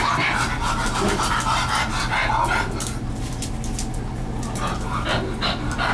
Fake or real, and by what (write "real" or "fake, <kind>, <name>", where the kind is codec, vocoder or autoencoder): real